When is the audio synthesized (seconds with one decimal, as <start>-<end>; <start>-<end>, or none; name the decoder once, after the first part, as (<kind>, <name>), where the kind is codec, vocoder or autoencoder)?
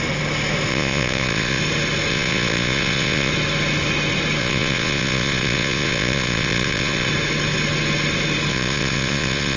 0.7-1.6 (vocoder, Vocos); 2.1-3.3; 4.4-7.1; 8.5-9.6